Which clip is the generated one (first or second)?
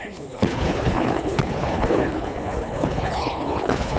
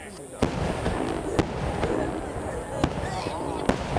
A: first